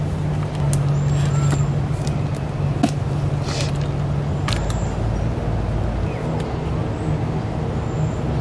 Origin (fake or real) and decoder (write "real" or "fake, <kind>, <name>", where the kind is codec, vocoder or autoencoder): real